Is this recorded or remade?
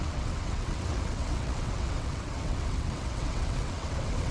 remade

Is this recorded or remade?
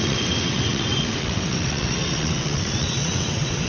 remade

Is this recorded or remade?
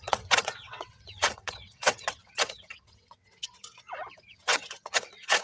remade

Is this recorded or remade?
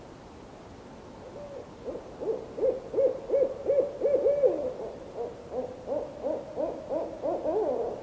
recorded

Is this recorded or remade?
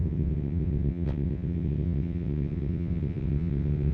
remade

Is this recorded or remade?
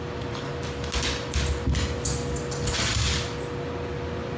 recorded